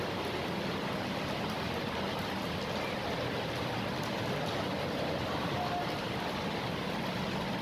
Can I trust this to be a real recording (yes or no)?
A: yes